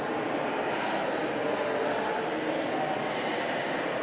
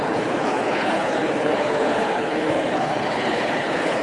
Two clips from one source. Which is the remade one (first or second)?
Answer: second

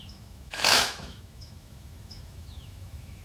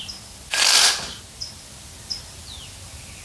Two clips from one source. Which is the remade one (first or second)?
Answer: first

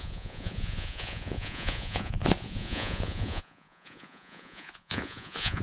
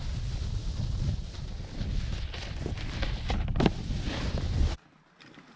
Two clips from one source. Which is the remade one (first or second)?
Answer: first